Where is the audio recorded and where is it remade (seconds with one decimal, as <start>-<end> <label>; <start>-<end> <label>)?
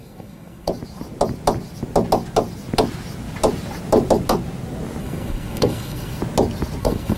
0.0-0.7 remade; 0.7-5.0 recorded; 5.0-6.2 remade; 6.2-6.8 recorded; 6.8-7.2 remade